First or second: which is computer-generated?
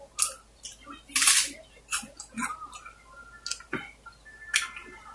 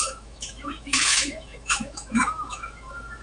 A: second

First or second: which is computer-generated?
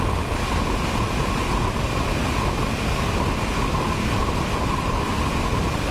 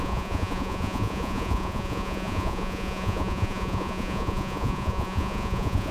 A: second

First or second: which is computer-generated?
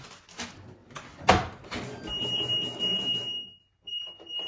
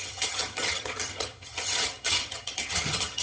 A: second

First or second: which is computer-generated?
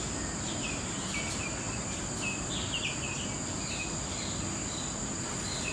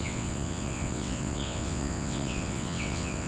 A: second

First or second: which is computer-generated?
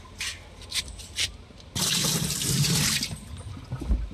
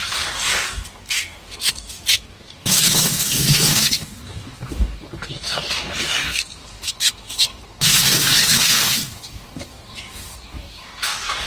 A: second